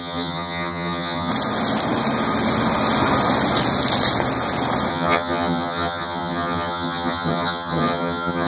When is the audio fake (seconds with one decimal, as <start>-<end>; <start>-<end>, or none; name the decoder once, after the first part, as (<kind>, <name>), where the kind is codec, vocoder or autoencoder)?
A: 0.0-1.3 (vocoder, HiFi-GAN); 4.9-8.5